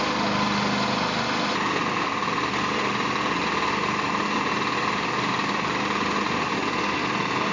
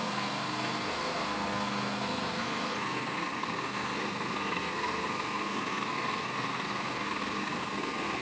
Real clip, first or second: first